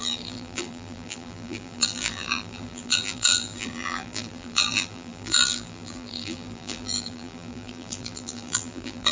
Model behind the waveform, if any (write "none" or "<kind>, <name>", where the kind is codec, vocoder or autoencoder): vocoder, BigVGAN v2